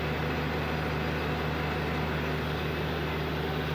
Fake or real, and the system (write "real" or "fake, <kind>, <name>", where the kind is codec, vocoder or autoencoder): real